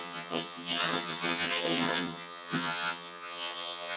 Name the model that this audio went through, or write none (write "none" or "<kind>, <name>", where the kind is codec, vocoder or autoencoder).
vocoder, HiFi-GAN